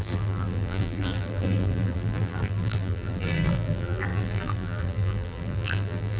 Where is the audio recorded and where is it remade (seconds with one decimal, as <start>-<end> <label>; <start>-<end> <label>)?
0.0-6.2 remade